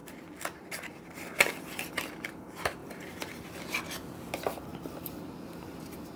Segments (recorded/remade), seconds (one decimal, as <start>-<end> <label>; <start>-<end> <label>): 0.0-1.9 remade; 1.9-2.8 recorded; 2.8-3.8 remade; 3.8-4.7 recorded; 4.7-6.2 remade